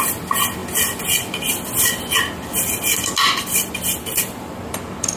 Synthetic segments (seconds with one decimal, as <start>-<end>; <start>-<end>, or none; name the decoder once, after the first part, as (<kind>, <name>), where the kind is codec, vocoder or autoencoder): none